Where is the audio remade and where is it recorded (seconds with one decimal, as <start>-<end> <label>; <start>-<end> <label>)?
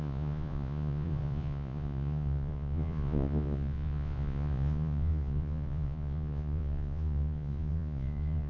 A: 0.0-8.5 remade